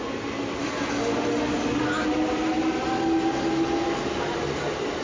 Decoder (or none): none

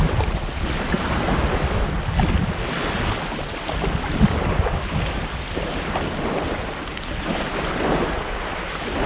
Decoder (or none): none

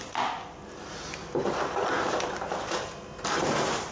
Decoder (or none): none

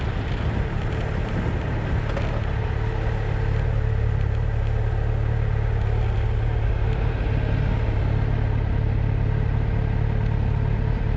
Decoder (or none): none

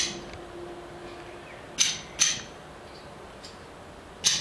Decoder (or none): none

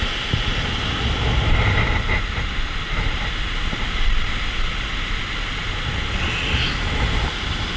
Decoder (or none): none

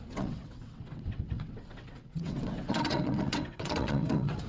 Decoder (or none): vocoder, WaveNeXt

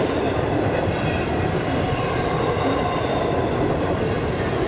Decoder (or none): none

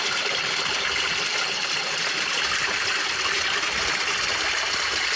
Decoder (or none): none